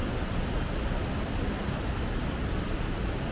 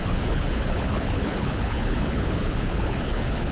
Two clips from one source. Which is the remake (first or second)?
second